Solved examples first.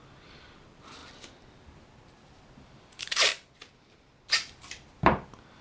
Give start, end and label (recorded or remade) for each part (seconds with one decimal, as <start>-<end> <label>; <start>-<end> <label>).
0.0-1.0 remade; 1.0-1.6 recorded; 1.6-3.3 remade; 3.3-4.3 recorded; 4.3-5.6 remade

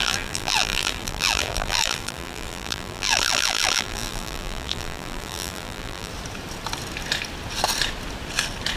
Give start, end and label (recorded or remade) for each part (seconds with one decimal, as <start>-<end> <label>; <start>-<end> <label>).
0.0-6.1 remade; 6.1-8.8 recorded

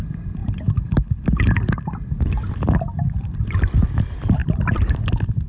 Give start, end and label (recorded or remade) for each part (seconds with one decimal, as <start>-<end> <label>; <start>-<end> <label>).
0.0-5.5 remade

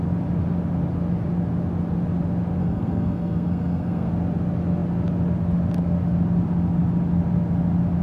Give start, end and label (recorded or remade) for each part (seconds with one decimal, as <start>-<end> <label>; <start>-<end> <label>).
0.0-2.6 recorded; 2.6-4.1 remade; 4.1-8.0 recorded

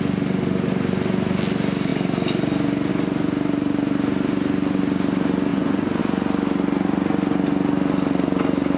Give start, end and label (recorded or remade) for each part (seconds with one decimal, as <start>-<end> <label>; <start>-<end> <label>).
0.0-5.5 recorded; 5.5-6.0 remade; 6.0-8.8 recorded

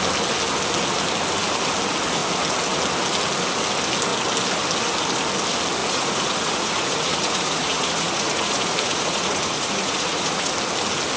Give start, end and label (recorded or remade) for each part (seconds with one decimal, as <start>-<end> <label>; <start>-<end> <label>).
0.0-5.8 recorded; 5.8-10.5 remade; 10.5-11.2 recorded

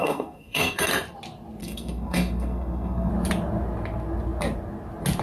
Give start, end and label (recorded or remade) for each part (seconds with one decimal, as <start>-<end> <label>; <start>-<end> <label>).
0.0-0.9 remade; 0.9-1.6 recorded; 1.6-3.1 remade; 3.1-5.2 recorded